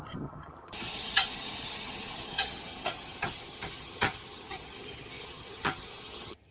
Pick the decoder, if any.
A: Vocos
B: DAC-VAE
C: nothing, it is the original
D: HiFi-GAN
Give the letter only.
D